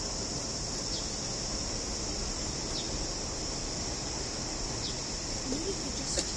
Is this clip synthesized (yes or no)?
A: no